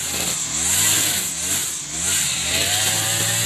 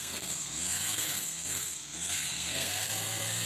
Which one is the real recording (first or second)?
first